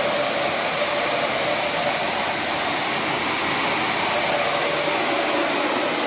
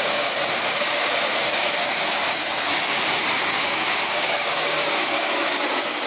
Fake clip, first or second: second